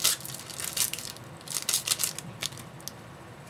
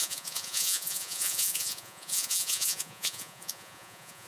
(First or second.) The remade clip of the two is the second